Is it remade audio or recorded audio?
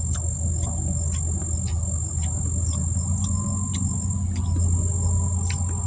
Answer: recorded